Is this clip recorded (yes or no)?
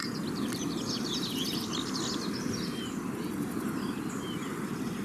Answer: yes